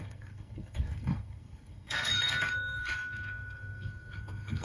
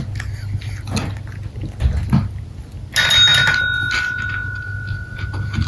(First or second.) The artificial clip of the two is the first